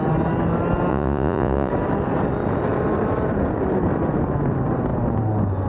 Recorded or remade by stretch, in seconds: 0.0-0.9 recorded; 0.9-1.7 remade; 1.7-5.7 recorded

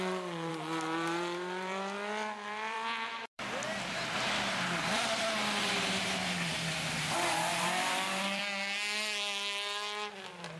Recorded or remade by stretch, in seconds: 0.0-0.5 recorded; 0.5-3.5 remade; 3.5-6.5 recorded; 6.5-8.4 remade; 8.4-10.6 recorded

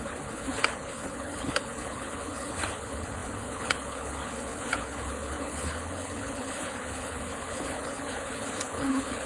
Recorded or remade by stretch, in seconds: 0.0-9.3 remade

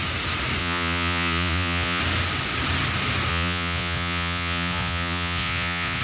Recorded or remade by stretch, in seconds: 0.0-0.6 recorded; 0.6-2.0 remade; 2.0-3.3 recorded; 3.3-6.0 remade

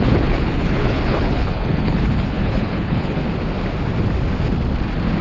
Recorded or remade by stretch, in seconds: 0.0-3.2 remade; 3.2-5.2 recorded

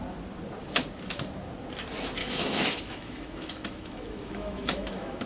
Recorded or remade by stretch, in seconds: 0.0-2.2 recorded; 2.2-5.3 remade

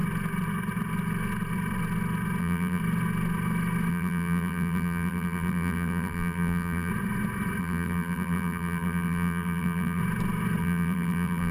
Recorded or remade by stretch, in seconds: 0.0-2.4 recorded; 2.4-2.8 remade; 2.8-3.9 recorded; 3.9-6.9 remade; 6.9-7.6 recorded; 7.6-10.0 remade; 10.0-10.6 recorded; 10.6-11.5 remade

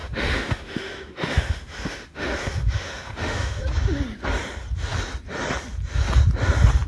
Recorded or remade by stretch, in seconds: 0.0-3.6 remade; 3.6-6.9 recorded